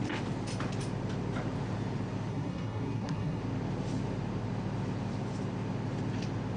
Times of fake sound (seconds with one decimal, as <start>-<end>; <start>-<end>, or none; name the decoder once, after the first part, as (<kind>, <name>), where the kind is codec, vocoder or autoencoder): 2.3-3.4 (codec, SNAC)